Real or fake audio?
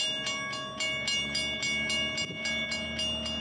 real